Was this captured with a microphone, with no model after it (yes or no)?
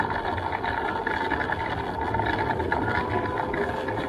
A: yes